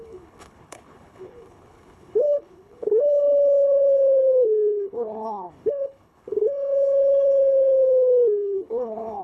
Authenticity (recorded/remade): remade